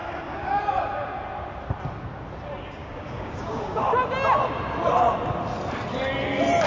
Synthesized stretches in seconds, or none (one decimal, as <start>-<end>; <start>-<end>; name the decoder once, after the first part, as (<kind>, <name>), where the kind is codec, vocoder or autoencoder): 0.0-0.6 (codec, DAC); 2.8-3.9